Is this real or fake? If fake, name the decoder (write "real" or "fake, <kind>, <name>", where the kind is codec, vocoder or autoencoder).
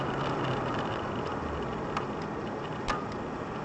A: real